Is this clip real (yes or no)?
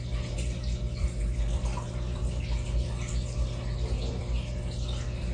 yes